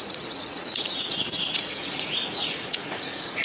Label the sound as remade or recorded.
remade